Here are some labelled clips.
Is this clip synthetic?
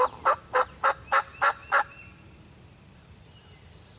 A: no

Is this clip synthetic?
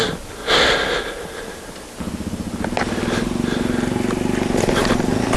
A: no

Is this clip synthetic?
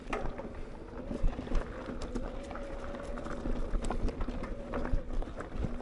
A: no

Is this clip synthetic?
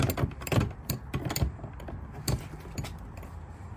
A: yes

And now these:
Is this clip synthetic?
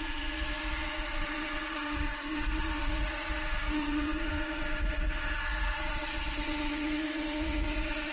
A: yes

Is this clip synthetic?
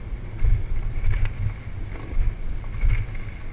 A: no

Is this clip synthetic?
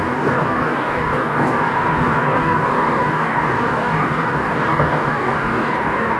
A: yes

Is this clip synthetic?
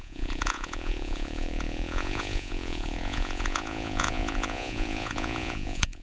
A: yes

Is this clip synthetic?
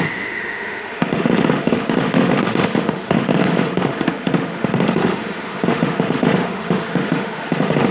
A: yes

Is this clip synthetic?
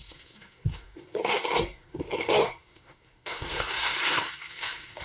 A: yes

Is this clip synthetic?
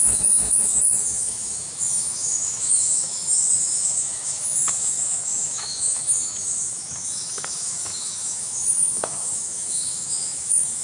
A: yes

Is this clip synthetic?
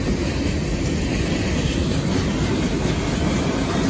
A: no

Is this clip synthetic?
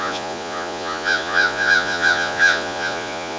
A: yes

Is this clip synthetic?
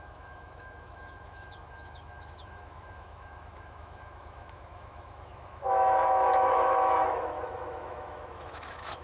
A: yes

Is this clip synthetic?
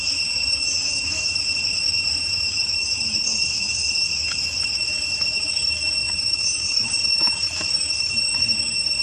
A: yes